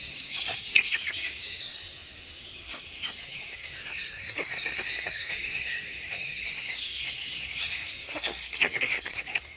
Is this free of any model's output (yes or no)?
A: no